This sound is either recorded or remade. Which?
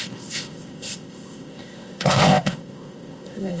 remade